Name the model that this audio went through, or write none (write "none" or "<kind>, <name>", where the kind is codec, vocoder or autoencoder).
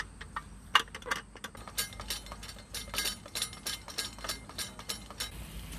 none